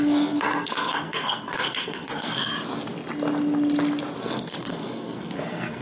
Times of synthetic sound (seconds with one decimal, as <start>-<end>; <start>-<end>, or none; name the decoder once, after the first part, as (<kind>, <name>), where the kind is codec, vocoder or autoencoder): 0.0-2.5 (codec, SNAC); 4.2-5.8